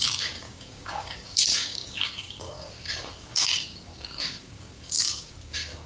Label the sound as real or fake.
fake